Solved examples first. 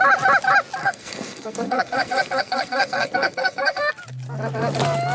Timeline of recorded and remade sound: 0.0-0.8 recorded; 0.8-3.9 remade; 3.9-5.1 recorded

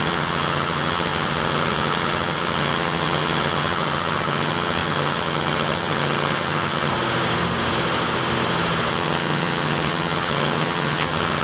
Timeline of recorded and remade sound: 0.0-6.9 remade; 6.9-8.9 recorded; 8.9-11.4 remade

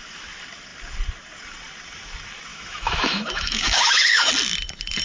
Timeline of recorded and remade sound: 0.0-2.5 recorded; 2.5-4.3 remade; 4.3-5.0 recorded

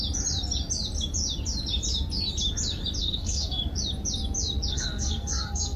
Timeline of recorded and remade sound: 0.0-3.0 recorded; 3.0-3.6 remade; 3.6-4.7 recorded; 4.7-5.8 remade